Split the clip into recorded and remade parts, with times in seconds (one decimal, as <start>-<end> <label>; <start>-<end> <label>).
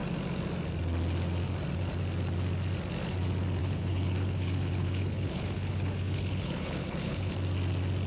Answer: 0.0-3.6 recorded; 3.6-7.3 remade; 7.3-8.1 recorded